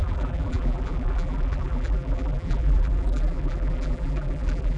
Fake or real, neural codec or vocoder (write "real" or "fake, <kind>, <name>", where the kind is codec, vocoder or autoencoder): fake, vocoder, BigVGAN v2